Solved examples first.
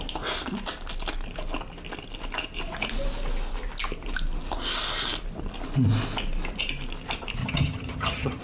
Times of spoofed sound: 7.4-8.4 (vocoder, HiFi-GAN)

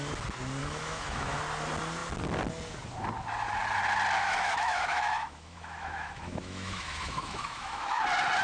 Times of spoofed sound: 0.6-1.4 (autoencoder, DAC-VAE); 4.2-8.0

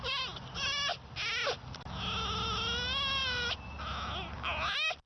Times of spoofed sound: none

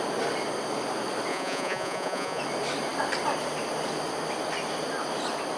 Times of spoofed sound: 1.3-2.4 (vocoder, Vocos)

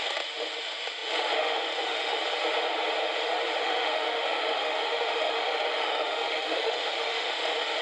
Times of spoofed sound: 0.0-2.2 (autoencoder, DAC-VAE); 3.6-7.8

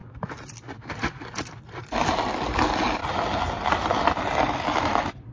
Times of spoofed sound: none

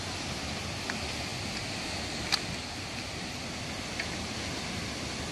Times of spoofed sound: none